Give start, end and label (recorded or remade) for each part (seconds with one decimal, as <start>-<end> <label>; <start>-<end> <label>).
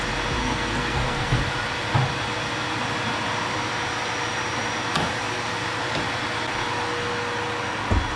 0.0-0.4 recorded; 0.4-1.4 remade; 1.4-8.2 recorded